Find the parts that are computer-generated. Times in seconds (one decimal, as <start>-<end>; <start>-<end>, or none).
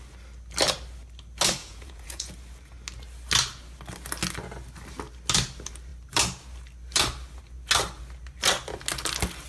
1.6-2.3